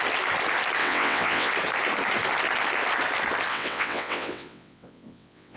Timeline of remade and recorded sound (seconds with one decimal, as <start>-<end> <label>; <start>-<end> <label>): 0.0-0.8 recorded; 0.8-1.5 remade; 1.5-3.5 recorded; 3.5-5.6 remade